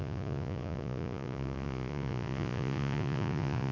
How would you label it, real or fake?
fake